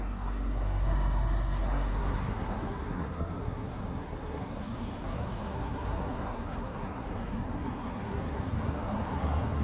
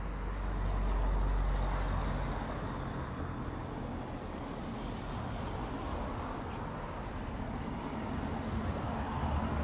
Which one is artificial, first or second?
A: first